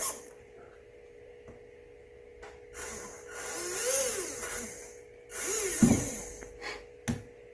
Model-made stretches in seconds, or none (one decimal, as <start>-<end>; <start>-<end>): 0.0-1.3